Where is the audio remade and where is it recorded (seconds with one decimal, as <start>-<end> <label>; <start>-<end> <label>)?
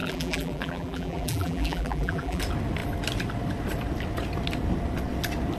0.0-2.4 remade; 2.4-5.6 recorded